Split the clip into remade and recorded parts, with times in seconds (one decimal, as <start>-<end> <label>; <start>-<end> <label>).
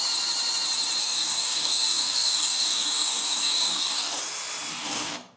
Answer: 0.0-1.0 recorded; 1.0-4.2 remade; 4.2-4.7 recorded; 4.7-5.4 remade